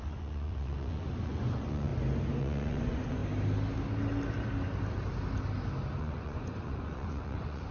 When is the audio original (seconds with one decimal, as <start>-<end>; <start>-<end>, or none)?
1.9-2.4; 3.2-6.0